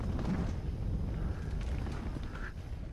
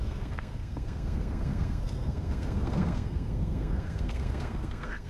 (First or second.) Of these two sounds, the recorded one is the first